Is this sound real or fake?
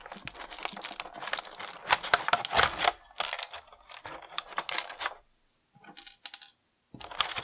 real